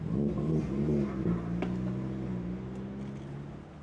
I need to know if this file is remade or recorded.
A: recorded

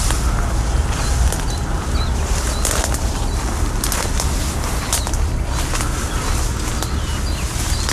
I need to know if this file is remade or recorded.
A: recorded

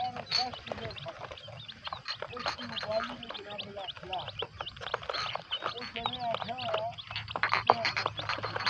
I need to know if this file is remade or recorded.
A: recorded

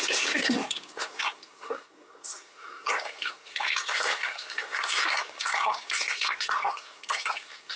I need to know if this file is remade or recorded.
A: remade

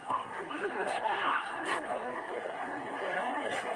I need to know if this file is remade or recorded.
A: remade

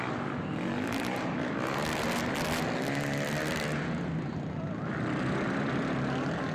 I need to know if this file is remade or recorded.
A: recorded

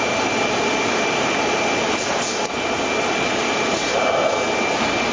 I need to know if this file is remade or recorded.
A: recorded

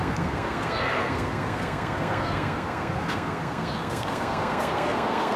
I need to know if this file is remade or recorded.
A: remade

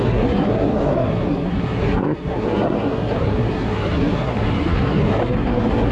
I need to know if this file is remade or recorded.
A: remade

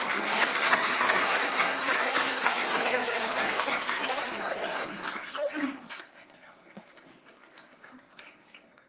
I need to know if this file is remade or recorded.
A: remade